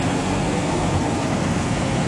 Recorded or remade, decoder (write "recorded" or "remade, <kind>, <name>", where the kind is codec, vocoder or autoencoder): remade, codec, SNAC